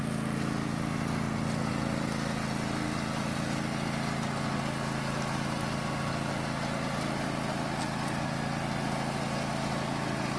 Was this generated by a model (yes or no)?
no